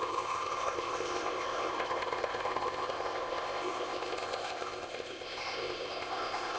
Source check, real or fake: fake